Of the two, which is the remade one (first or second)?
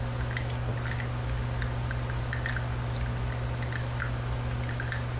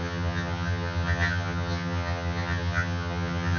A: second